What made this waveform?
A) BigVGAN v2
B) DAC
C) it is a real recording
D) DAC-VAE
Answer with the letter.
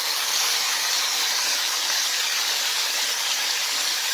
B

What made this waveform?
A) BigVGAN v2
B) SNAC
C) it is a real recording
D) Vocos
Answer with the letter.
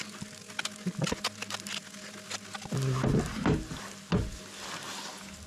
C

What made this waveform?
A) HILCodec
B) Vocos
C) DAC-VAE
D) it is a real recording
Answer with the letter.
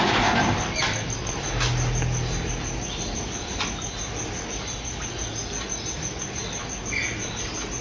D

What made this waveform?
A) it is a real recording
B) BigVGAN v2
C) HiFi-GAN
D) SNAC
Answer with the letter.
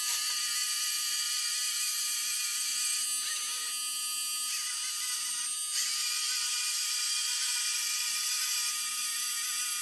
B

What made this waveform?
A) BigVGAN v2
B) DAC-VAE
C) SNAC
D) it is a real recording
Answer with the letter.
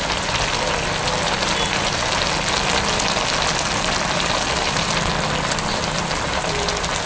D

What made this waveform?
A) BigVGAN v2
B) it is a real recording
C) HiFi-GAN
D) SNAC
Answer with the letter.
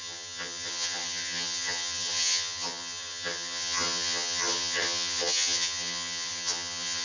C